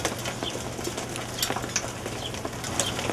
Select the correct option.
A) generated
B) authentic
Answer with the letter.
B